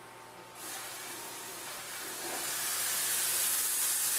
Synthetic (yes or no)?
no